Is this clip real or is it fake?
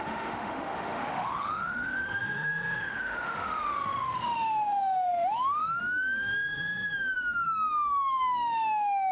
fake